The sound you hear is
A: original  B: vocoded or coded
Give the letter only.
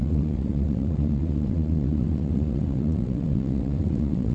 B